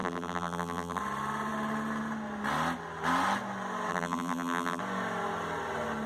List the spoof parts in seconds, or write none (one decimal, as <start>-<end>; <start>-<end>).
0.0-1.0; 3.9-4.8